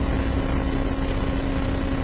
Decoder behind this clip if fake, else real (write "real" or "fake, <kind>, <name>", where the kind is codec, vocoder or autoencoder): real